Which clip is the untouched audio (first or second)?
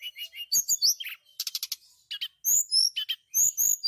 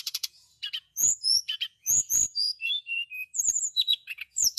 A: first